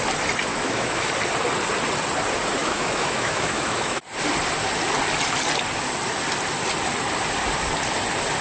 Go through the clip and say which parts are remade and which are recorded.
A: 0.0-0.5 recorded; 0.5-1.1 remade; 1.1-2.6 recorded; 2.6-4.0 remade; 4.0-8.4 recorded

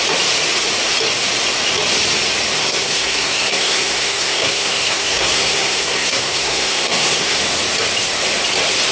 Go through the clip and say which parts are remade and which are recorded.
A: 0.0-2.6 recorded; 2.6-7.4 remade; 7.4-8.9 recorded

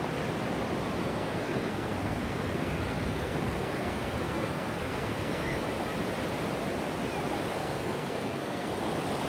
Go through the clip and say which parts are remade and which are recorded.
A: 0.0-1.0 recorded; 1.0-5.7 remade; 5.7-7.5 recorded; 7.5-8.7 remade; 8.7-9.3 recorded

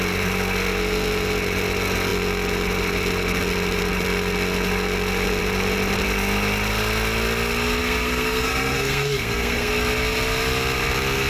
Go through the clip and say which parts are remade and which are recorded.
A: 0.0-7.8 recorded; 7.8-9.7 remade; 9.7-11.3 recorded

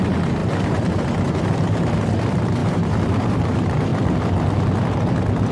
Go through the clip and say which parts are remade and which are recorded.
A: 0.0-3.9 remade; 3.9-5.5 recorded

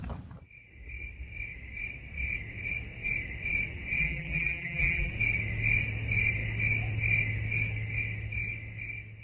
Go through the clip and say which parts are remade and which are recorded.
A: 0.0-4.0 recorded; 4.0-5.1 remade; 5.1-9.2 recorded